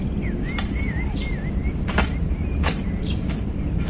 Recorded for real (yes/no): no